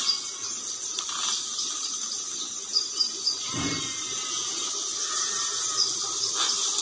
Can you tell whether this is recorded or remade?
recorded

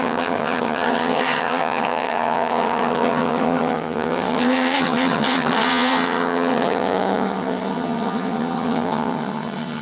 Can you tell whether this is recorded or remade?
remade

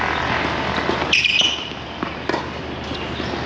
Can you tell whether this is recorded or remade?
recorded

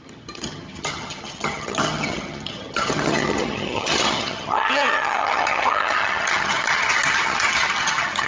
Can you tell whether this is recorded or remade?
remade